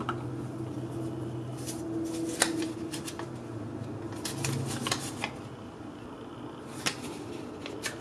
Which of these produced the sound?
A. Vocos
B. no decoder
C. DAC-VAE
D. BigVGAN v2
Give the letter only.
B